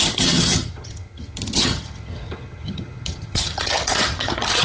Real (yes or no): no